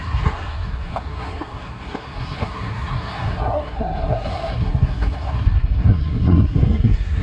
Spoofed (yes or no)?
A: yes